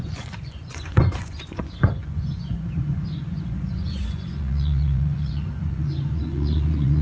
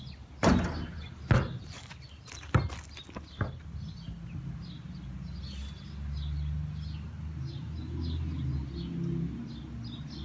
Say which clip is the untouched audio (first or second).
second